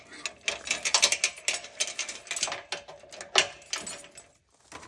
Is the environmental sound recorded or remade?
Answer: recorded